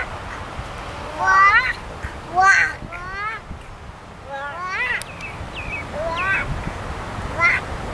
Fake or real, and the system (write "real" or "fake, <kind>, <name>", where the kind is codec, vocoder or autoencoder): real